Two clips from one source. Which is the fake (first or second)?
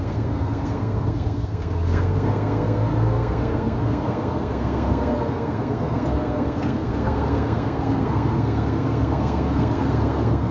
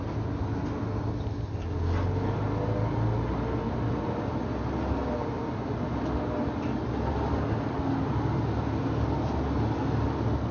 first